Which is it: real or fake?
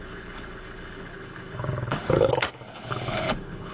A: fake